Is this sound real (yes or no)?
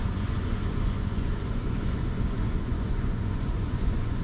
no